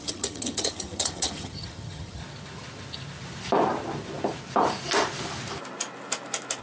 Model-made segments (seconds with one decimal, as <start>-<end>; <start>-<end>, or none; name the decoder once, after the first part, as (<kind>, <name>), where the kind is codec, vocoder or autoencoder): 0.0-2.2 (vocoder, HiFi-GAN)